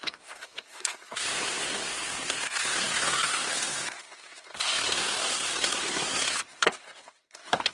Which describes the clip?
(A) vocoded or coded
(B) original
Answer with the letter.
A